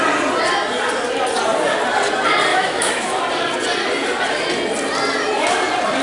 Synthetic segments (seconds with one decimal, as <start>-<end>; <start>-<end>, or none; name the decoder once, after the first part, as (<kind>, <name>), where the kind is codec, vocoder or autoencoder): 2.5-3.2 (autoencoder, DAC-VAE)